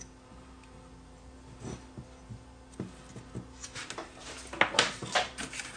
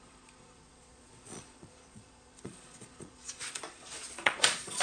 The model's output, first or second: second